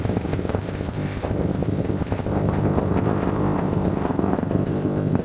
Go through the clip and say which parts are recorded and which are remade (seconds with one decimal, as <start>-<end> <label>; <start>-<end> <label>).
0.0-5.2 remade

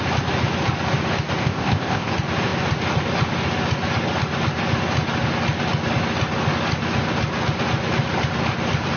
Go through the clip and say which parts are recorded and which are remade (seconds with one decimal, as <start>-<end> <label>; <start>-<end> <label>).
0.0-1.4 recorded; 1.4-2.1 remade; 2.1-9.0 recorded

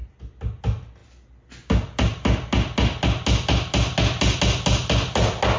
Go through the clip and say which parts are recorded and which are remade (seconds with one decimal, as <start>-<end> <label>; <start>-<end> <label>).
0.0-5.6 recorded

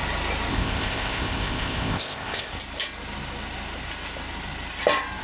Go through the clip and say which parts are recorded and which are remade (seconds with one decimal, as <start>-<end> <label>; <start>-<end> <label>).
0.0-0.5 recorded; 0.5-2.5 remade; 2.5-5.2 recorded

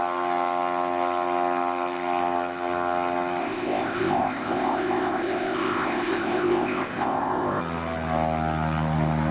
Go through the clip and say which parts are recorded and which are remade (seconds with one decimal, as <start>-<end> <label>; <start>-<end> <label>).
0.0-3.4 recorded; 3.4-7.6 remade; 7.6-9.3 recorded

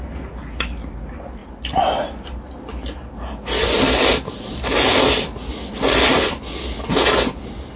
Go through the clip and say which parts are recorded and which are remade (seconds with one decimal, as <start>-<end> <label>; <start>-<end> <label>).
0.0-7.8 recorded

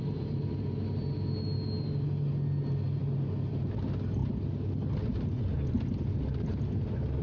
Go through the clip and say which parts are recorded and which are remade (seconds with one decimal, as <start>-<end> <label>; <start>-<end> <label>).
0.0-7.2 recorded